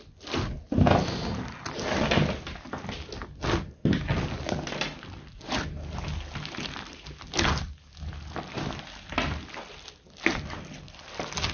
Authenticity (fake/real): real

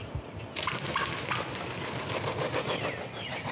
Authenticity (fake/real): real